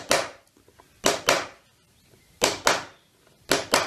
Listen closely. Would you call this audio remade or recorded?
recorded